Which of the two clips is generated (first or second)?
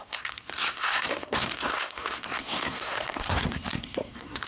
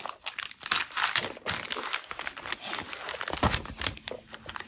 first